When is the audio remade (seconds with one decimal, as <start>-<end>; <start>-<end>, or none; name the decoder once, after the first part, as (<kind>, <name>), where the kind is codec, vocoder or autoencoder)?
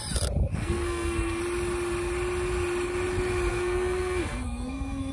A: 0.5-1.4 (codec, SNAC); 3.5-5.1